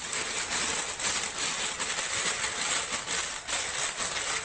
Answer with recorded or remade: recorded